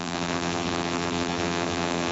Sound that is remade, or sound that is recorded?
remade